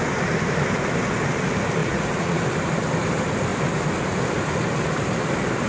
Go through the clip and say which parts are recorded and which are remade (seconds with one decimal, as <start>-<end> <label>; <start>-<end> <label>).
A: 0.0-1.8 recorded; 1.8-2.4 remade; 2.4-5.7 recorded